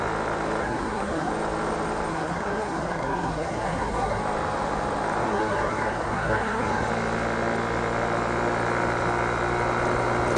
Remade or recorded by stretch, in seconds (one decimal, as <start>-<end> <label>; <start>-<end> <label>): 0.0-0.6 recorded; 0.6-1.3 remade; 1.3-2.1 recorded; 2.1-4.2 remade; 4.2-5.2 recorded; 5.2-6.9 remade; 6.9-10.4 recorded